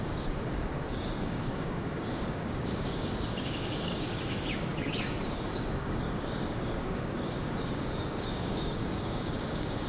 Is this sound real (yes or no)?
no